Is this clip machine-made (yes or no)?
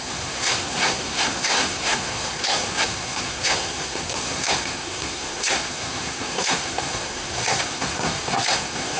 yes